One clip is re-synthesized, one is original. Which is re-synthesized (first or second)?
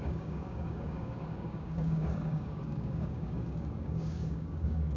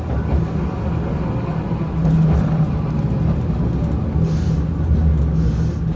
first